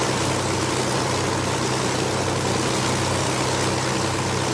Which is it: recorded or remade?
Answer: recorded